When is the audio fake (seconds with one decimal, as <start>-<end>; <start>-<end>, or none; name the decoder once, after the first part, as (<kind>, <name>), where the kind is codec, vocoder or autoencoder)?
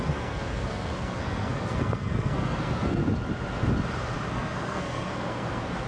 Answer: 0.0-3.0 (codec, SNAC); 4.3-5.9